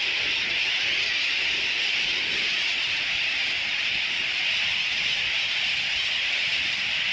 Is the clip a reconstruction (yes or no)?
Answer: no